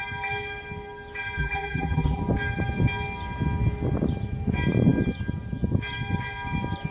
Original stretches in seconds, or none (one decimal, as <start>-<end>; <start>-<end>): 0.0-1.4; 2.2-6.9